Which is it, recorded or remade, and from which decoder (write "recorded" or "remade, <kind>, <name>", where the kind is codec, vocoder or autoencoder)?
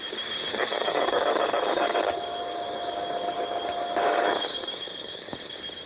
remade, codec, DAC